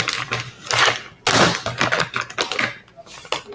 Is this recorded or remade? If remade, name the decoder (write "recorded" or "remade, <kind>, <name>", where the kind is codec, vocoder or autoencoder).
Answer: recorded